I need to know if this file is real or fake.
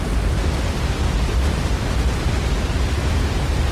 real